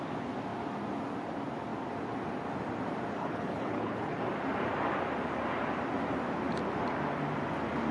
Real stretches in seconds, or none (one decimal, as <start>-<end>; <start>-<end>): 0.0-3.2; 4.2-7.9